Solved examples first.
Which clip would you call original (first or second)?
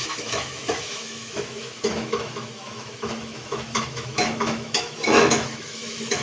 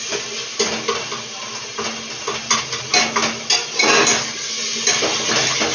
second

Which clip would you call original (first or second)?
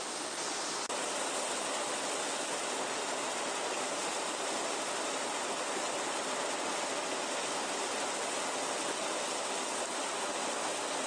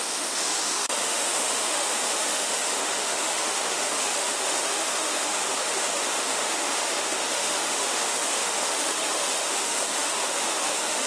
first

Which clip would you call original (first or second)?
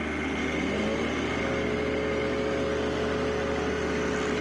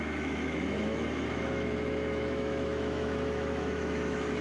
first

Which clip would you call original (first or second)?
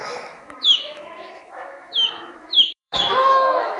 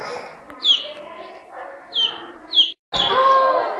second